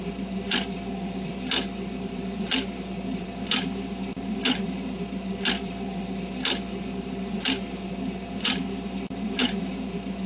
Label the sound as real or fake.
fake